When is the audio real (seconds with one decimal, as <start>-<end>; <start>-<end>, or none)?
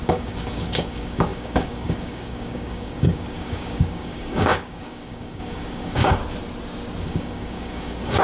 6.2-7.0